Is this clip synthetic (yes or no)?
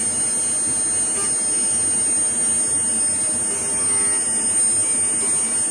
no